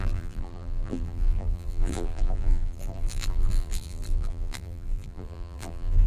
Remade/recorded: remade